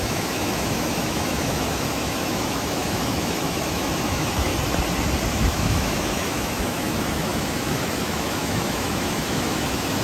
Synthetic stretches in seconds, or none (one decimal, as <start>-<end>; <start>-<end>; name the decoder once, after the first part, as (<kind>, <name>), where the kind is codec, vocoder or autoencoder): 0.0-4.5 (autoencoder, DAC-VAE); 5.3-10.0